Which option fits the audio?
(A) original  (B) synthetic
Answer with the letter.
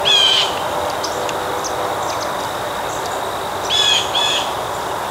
A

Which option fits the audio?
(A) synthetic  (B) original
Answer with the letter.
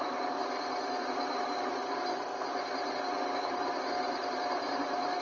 B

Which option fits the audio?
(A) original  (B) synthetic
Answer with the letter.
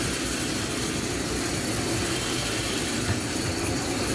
B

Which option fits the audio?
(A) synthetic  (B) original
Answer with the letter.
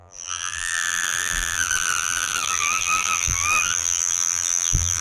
A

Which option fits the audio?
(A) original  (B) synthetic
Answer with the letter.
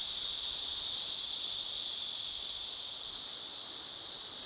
A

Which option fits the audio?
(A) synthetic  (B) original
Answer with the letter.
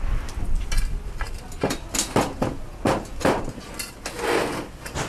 B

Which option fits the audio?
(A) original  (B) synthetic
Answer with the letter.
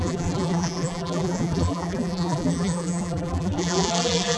B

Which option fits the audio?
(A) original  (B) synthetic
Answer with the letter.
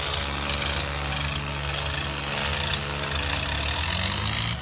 A